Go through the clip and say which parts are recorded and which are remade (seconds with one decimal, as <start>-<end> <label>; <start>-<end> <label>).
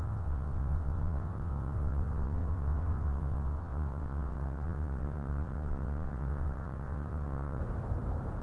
0.0-7.6 remade; 7.6-8.4 recorded